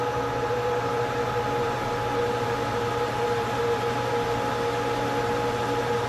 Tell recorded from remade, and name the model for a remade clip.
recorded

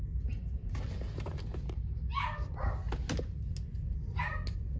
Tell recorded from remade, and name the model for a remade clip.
recorded